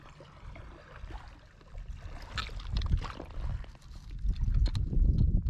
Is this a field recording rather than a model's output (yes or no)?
yes